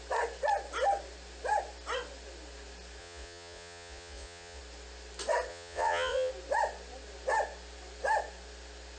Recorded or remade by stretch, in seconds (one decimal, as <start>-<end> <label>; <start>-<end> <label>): 0.0-3.0 recorded; 3.0-4.6 remade; 4.6-5.5 recorded; 5.5-6.3 remade; 6.3-9.0 recorded

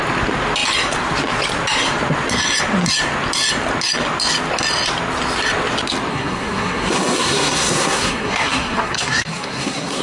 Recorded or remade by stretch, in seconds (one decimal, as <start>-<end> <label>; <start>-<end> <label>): 0.0-6.1 recorded; 6.1-10.0 remade

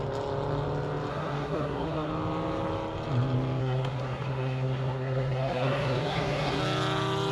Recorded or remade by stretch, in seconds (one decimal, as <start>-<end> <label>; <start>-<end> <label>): 0.0-1.1 recorded; 1.1-2.1 remade; 2.1-3.6 recorded; 3.6-6.6 remade; 6.6-7.3 recorded

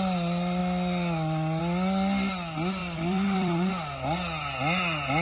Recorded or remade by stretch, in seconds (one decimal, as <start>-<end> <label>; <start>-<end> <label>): 0.0-2.8 recorded; 2.8-3.7 remade; 3.7-5.2 recorded

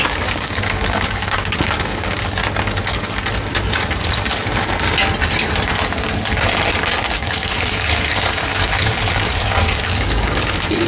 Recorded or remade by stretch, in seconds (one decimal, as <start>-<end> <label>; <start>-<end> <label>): 0.0-2.4 remade; 2.4-7.1 recorded; 7.1-10.9 remade

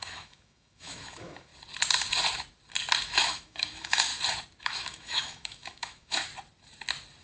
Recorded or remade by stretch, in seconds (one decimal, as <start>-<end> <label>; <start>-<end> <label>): 0.0-1.5 remade; 1.5-3.0 recorded; 3.0-4.1 remade; 4.1-4.6 recorded; 4.6-6.3 remade; 6.3-7.2 recorded

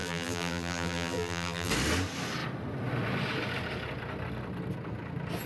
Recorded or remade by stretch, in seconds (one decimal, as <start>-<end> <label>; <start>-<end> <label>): 0.0-1.7 remade; 1.7-5.5 recorded

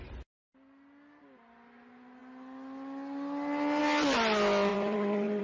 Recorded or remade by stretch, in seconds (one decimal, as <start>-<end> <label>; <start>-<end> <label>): 0.0-4.7 recorded; 4.7-5.4 remade